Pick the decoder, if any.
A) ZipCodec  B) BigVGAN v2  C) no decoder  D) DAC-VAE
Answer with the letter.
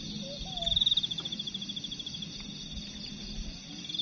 C